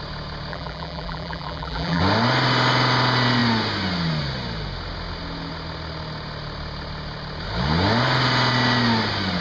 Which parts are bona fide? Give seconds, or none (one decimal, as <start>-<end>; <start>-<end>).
0.0-0.5; 2.0-9.4